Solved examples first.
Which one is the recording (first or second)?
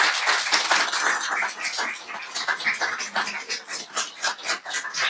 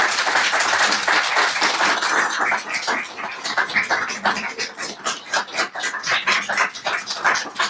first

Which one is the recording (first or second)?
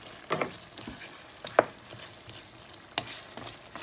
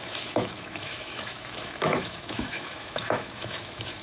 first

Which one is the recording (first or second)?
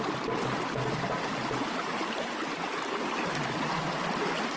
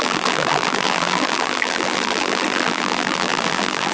first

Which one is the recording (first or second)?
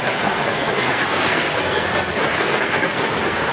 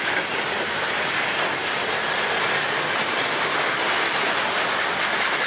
second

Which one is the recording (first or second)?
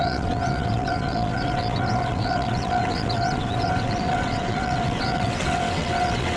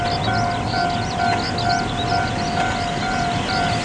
second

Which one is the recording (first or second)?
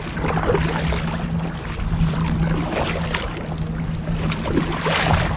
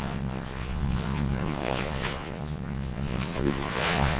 first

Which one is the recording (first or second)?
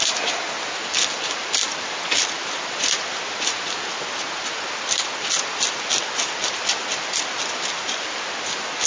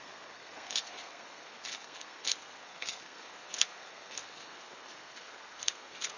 first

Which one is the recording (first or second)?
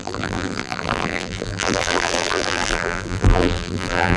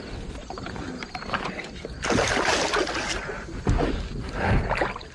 second